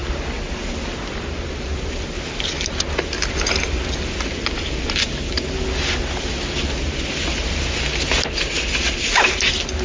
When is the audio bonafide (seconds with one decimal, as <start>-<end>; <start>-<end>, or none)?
0.0-9.8